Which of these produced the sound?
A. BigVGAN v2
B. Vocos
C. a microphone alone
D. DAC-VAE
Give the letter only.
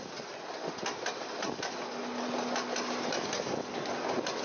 C